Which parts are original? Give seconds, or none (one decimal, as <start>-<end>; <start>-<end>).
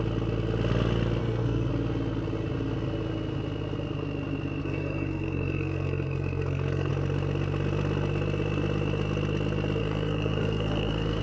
0.0-1.2; 1.7-4.6; 6.9-9.8